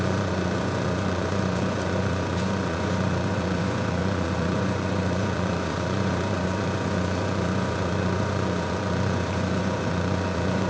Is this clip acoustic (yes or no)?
no